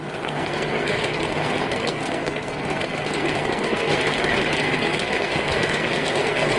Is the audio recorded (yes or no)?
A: no